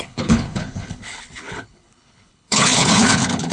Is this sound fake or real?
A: fake